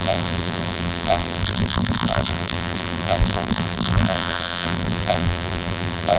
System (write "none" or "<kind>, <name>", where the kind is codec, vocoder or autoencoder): vocoder, BigVGAN v2